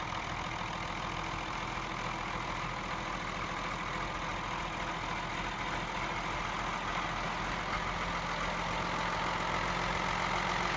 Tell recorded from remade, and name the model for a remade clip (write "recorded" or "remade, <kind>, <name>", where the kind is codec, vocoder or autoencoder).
recorded